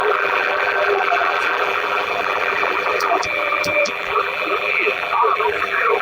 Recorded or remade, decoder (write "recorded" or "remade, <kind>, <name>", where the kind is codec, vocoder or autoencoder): remade, vocoder, BigVGAN v2